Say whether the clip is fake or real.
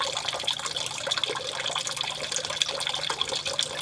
real